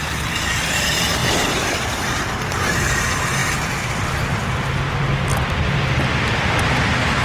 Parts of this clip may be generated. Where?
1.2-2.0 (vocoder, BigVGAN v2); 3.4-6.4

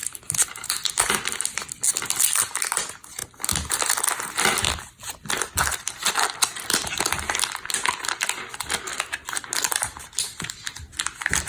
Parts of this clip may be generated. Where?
none

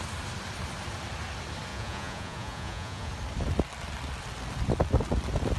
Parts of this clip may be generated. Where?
1.7-3.1 (vocoder, Vocos)

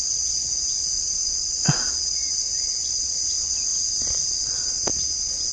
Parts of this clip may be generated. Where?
0.0-3.7 (vocoder, Vocos); 4.3-5.5

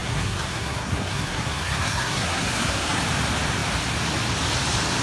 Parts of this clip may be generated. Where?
0.0-3.0 (codec, SNAC)